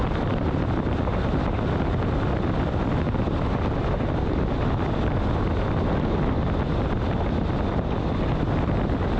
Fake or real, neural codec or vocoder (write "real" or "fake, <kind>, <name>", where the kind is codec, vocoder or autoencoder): real